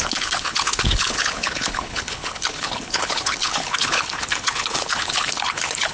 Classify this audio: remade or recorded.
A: remade